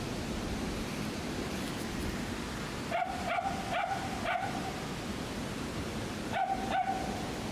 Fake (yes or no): no